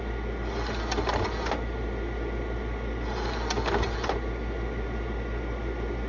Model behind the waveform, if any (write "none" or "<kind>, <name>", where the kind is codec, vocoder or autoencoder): none